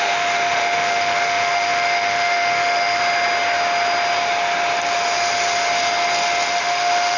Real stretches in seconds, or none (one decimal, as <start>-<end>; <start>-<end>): 3.0-6.6